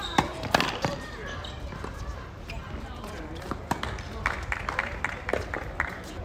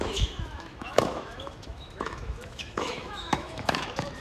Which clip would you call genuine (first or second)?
first